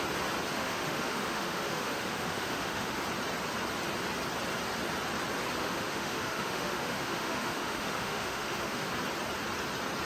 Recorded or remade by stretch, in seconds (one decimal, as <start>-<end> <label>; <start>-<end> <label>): 0.0-0.5 recorded; 0.5-3.0 remade; 3.0-5.6 recorded; 5.6-8.9 remade; 8.9-10.1 recorded

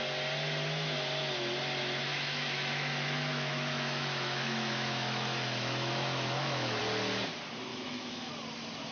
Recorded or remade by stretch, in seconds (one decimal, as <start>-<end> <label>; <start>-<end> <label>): 0.0-2.1 recorded; 2.1-6.8 remade; 6.8-7.7 recorded; 7.7-8.3 remade; 8.3-8.9 recorded

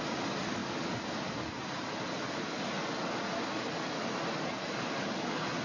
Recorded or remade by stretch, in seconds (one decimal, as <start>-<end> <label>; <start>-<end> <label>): 0.0-5.6 recorded

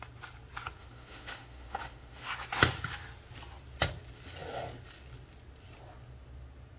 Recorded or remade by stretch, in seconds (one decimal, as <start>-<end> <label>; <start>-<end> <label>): 0.0-0.8 recorded; 0.8-2.3 remade; 2.3-6.8 recorded

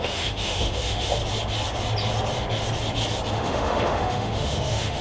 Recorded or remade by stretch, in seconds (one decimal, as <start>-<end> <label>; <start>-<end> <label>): 0.0-1.2 remade; 1.2-3.3 recorded; 3.3-5.0 remade